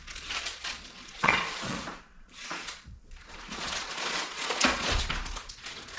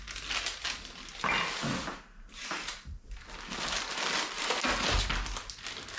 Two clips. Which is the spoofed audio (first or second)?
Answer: first